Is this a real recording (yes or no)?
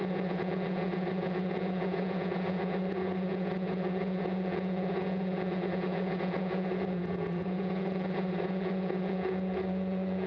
no